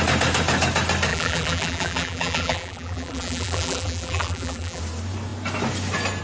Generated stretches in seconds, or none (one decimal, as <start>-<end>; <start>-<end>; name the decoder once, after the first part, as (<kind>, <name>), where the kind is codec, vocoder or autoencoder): 1.1-4.8 (vocoder, BigVGAN v2)